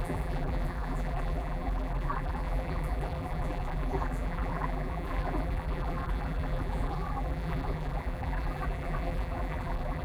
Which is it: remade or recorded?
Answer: remade